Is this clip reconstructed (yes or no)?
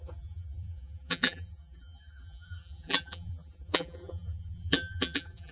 yes